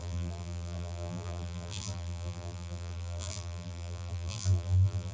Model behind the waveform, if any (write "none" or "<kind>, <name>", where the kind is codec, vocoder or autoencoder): vocoder, BigVGAN v2